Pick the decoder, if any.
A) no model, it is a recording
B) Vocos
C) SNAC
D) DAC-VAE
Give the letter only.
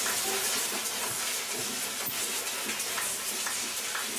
A